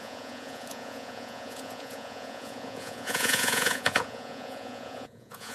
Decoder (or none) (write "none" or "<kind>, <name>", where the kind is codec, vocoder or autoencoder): vocoder, Vocos